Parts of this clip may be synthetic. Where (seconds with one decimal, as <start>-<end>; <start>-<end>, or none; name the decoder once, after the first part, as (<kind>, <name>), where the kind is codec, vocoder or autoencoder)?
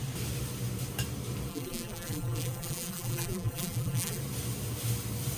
1.5-4.2 (vocoder, BigVGAN v2)